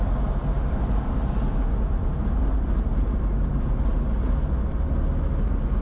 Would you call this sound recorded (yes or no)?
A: yes